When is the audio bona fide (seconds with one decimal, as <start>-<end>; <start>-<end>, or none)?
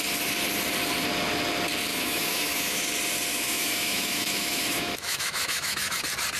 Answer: 0.0-1.9; 2.8-3.3; 6.0-6.4